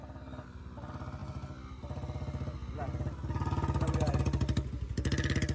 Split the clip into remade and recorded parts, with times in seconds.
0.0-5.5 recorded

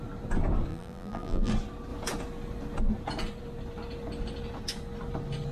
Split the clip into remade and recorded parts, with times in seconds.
0.0-0.7 recorded; 0.7-1.5 remade; 1.5-5.5 recorded

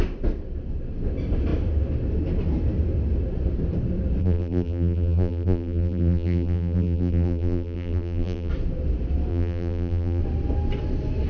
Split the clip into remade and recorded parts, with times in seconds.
0.0-4.2 recorded; 4.2-8.5 remade; 8.5-9.3 recorded; 9.3-10.2 remade; 10.2-11.3 recorded

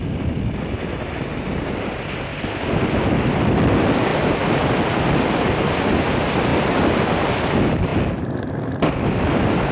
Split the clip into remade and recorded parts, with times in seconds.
0.0-2.3 remade; 2.3-2.8 recorded; 2.8-4.1 remade; 4.1-5.0 recorded; 5.0-9.7 remade

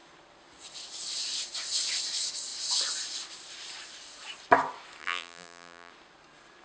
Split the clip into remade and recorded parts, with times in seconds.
0.0-5.0 recorded; 5.0-5.9 remade; 5.9-6.6 recorded

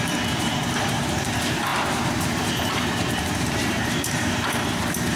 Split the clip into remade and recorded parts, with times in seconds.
0.0-5.2 remade